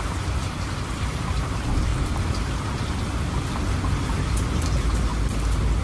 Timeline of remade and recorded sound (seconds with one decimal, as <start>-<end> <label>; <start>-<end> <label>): 0.0-1.9 remade; 1.9-4.3 recorded; 4.3-5.1 remade; 5.1-5.8 recorded